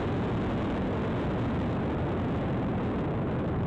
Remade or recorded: recorded